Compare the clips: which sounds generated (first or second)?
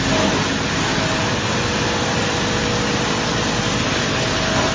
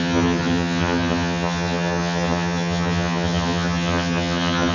second